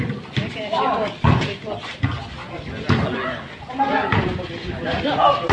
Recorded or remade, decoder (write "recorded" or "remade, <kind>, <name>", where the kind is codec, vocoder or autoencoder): recorded